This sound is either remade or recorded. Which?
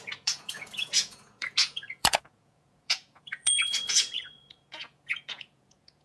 remade